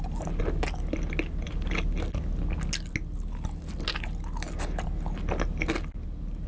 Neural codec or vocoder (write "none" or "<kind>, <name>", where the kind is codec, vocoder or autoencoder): none